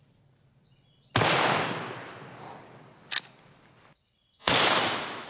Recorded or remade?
recorded